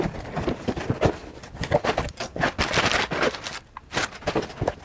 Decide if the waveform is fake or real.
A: real